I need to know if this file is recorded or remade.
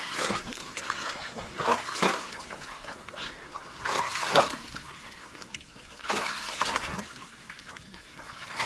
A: remade